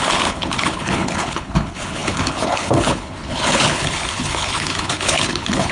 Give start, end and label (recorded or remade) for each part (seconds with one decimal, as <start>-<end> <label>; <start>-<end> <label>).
0.0-5.7 remade